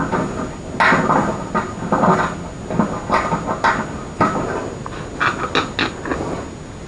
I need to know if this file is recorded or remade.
recorded